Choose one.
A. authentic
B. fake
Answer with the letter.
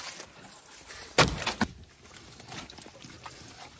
A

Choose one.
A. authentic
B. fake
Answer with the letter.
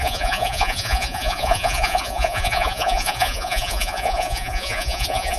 B